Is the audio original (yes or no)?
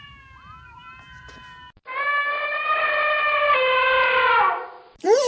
yes